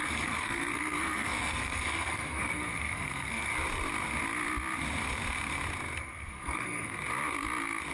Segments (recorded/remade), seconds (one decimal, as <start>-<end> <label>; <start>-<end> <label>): 0.0-3.5 remade; 3.5-6.0 recorded; 6.0-7.0 remade; 7.0-7.9 recorded